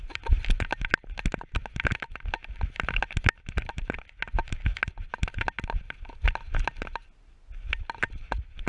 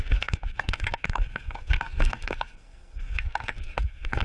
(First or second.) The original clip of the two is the first